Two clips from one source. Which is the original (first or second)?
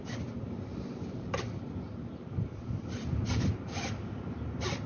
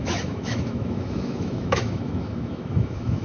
first